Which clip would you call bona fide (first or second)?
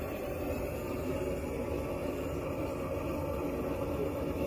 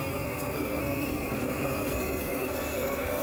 first